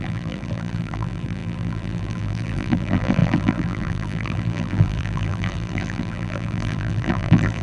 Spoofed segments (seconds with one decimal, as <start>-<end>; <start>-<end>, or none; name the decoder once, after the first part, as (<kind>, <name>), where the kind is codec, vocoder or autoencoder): 0.0-7.6 (vocoder, BigVGAN v2)